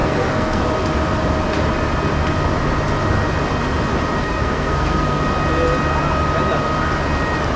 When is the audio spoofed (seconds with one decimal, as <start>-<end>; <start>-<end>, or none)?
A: 0.0-0.6; 4.2-5.2